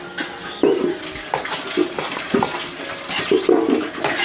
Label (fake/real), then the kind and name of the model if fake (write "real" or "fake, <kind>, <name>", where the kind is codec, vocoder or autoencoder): real